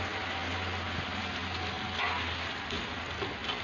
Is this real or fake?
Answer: real